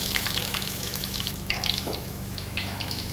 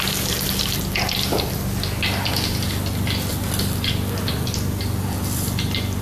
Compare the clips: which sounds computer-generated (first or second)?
first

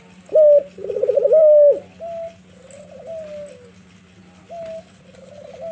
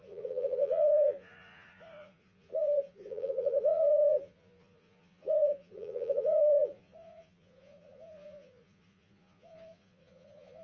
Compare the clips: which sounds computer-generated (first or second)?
second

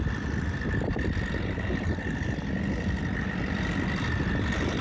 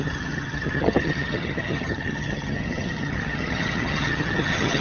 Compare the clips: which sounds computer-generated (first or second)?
second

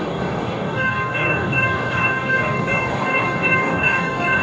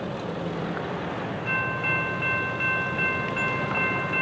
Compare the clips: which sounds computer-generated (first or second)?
first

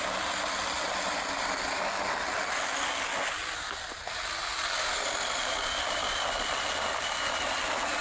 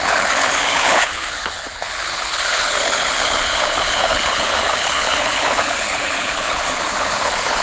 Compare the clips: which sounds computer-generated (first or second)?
second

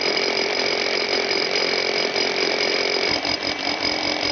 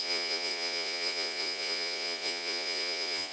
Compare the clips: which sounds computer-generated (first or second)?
second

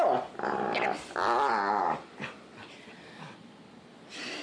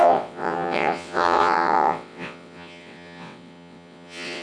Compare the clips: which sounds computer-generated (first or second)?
second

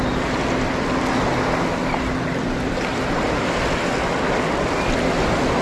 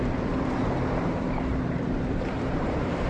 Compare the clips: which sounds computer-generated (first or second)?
second